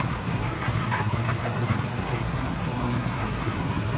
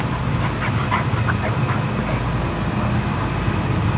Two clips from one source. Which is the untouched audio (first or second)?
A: second